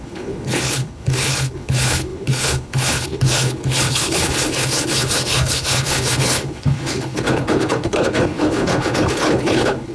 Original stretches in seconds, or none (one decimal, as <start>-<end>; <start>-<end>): none